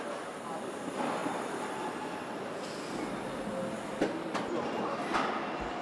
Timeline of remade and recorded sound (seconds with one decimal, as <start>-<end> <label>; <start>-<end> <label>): 0.0-5.8 recorded